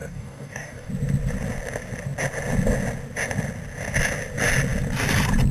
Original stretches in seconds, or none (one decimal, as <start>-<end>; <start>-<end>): 0.9-5.5